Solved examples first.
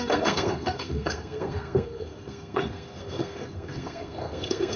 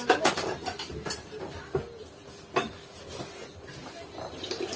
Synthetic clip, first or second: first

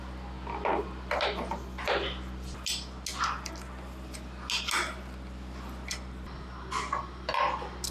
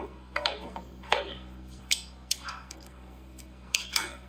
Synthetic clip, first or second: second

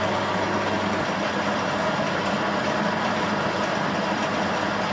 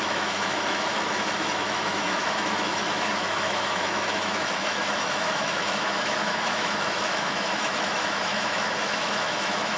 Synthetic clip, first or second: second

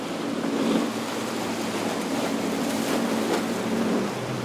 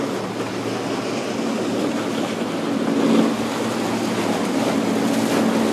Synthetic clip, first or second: first